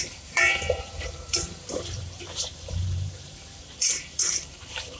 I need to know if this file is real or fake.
fake